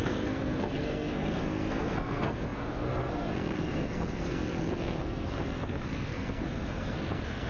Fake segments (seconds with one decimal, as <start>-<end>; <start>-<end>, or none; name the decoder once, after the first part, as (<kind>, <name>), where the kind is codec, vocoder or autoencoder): 0.0-7.5 (codec, SNAC)